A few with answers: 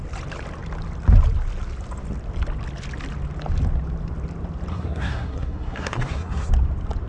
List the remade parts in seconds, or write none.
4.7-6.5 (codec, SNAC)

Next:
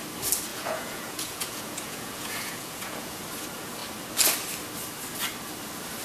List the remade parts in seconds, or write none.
0.5-3.2 (vocoder, Vocos)

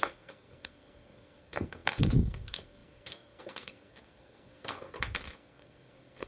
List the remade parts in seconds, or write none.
0.0-6.3 (codec, SNAC)

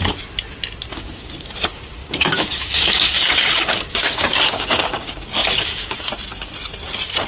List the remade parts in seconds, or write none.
0.9-1.5 (codec, DAC); 2.0-6.1

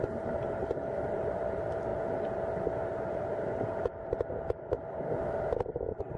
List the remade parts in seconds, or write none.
0.0-1.9 (vocoder, BigVGAN v2); 4.3-6.2